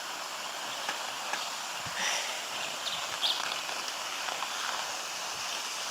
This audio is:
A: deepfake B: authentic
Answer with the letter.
B